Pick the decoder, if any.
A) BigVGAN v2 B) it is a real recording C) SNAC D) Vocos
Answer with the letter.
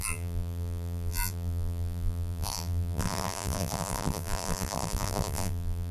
A